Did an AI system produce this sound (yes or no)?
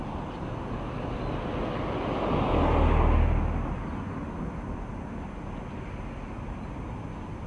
no